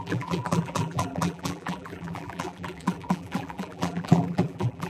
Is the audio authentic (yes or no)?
no